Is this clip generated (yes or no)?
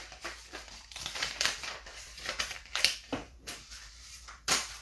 yes